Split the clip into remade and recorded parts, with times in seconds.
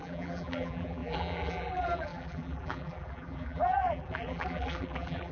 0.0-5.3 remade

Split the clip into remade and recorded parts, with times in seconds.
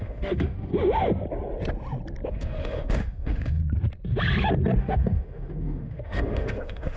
0.0-0.7 remade; 0.7-2.3 recorded; 2.3-3.6 remade; 3.6-4.8 recorded; 4.8-7.0 remade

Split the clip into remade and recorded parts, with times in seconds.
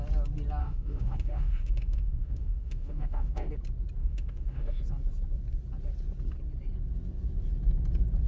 0.0-0.6 recorded; 0.6-3.5 remade; 3.5-4.0 recorded; 4.0-4.8 remade; 4.8-8.3 recorded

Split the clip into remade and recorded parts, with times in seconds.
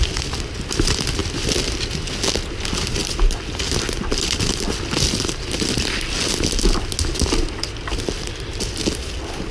0.0-9.5 recorded